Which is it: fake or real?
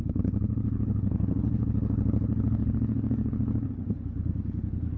fake